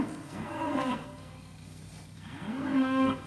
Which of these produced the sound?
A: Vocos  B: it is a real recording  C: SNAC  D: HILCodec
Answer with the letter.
C